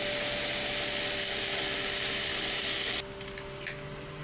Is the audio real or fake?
real